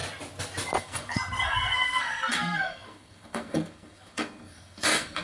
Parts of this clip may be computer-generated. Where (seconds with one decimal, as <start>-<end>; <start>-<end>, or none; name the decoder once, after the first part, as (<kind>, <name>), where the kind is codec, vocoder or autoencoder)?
0.8-5.2 (codec, SNAC)